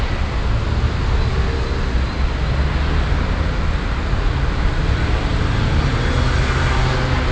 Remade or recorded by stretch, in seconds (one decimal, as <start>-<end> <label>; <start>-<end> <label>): 0.0-7.3 recorded

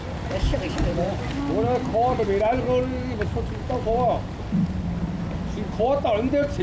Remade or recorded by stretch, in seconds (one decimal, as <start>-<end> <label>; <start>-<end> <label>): 0.0-0.5 recorded; 0.5-1.2 remade; 1.2-6.6 recorded

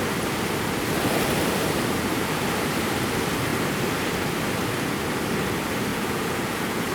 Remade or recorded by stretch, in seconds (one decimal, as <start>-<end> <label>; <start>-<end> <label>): 0.0-5.9 recorded; 5.9-6.9 remade

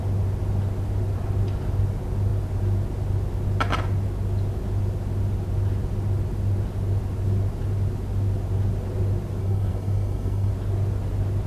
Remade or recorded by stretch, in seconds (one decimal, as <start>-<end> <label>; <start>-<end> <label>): 0.0-9.4 recorded; 9.4-10.5 remade; 10.5-11.5 recorded